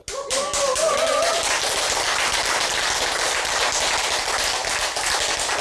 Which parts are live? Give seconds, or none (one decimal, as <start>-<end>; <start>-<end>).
0.0-5.6